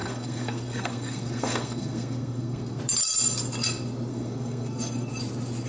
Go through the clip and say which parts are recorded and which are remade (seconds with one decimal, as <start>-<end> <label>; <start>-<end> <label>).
0.0-2.8 remade; 2.8-4.1 recorded; 4.1-5.1 remade; 5.1-5.7 recorded